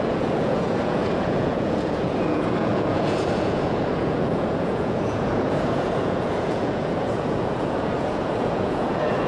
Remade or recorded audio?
remade